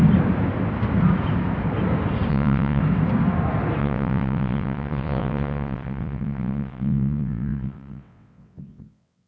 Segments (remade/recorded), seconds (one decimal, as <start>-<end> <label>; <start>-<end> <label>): 0.0-2.3 recorded; 2.3-2.8 remade; 2.8-3.8 recorded; 3.8-9.3 remade